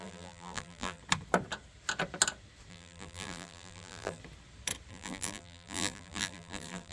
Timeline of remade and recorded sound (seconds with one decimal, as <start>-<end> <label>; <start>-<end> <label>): 0.0-1.0 remade; 1.0-2.7 recorded; 2.7-4.2 remade; 4.2-4.9 recorded; 4.9-6.9 remade